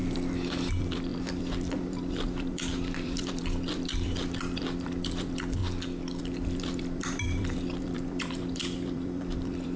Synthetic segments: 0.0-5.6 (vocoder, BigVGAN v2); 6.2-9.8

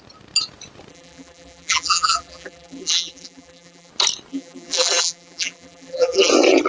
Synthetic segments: 0.9-3.9 (vocoder, BigVGAN v2); 4.3-6.3

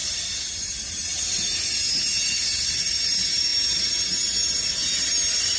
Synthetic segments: none

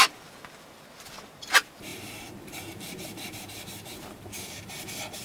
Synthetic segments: 1.9-5.2 (vocoder, BigVGAN v2)

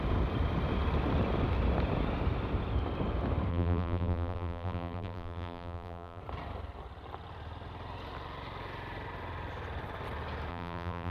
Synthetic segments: 3.5-6.2 (vocoder, BigVGAN v2); 10.5-11.1

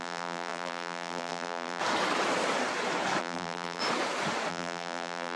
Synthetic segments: 0.0-1.8 (vocoder, BigVGAN v2); 3.2-3.8; 4.5-5.4

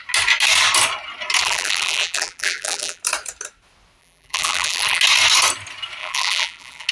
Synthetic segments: 1.4-3.0 (vocoder, BigVGAN v2); 4.0-5.0; 6.0-6.9

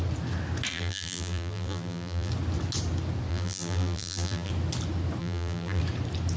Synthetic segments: 0.7-2.3 (vocoder, BigVGAN v2); 3.3-4.5; 5.2-5.8